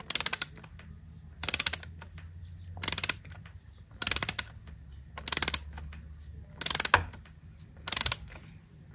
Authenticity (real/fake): real